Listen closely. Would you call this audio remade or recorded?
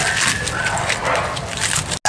recorded